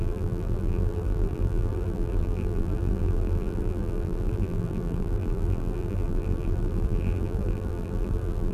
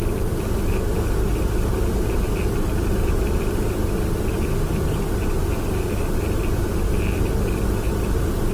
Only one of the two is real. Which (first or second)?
second